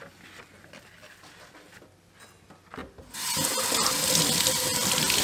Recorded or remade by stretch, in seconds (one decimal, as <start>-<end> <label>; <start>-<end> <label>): 0.0-5.2 recorded